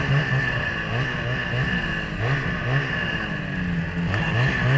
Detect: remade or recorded recorded